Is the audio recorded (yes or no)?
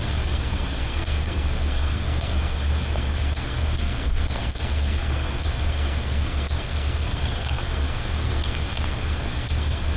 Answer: no